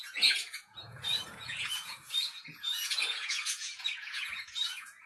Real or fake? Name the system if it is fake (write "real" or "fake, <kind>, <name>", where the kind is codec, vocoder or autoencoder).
fake, vocoder, Vocos